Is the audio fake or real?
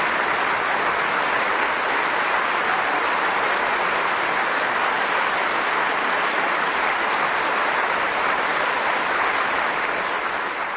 real